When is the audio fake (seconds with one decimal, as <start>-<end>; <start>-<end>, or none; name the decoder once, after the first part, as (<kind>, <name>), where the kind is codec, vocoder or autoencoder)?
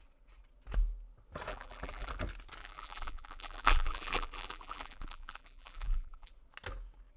1.5-2.2 (vocoder, BigVGAN v2); 2.6-6.3